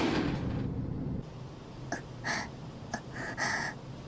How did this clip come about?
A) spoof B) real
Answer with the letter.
B